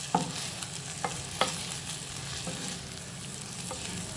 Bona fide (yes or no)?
yes